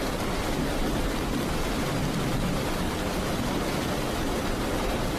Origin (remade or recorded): recorded